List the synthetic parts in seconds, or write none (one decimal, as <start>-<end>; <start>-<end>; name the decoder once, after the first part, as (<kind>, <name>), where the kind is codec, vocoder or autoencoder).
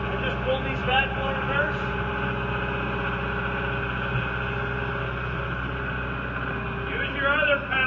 0.8-2.1 (vocoder, BigVGAN v2)